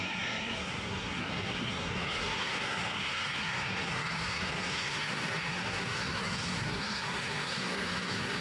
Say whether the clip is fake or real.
fake